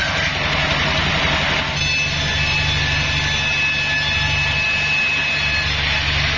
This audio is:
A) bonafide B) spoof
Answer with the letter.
A